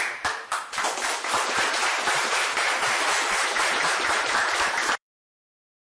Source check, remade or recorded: remade